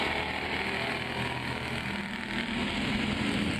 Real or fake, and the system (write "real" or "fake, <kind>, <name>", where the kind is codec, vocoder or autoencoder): real